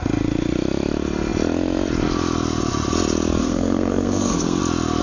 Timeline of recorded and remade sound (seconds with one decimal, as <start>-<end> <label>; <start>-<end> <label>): 0.0-3.4 recorded; 3.4-4.6 remade; 4.6-5.0 recorded